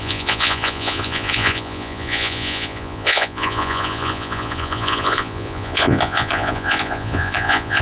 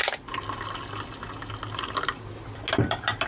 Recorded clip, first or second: second